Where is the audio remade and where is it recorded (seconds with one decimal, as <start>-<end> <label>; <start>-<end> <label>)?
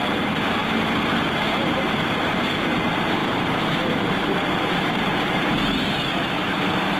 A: 0.0-7.0 remade